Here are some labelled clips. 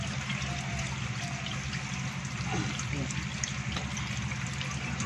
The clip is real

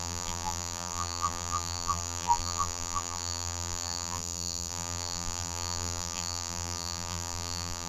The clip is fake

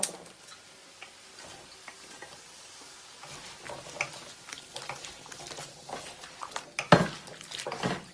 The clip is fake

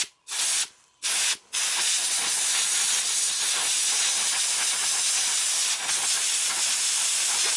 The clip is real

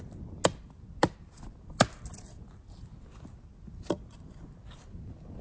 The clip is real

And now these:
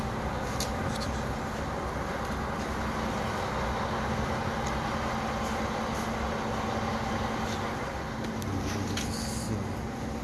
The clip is real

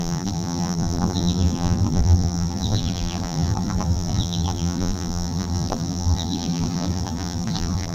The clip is fake